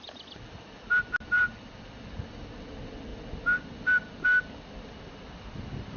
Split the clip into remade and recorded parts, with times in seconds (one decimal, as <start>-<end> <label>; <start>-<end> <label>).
0.0-6.0 recorded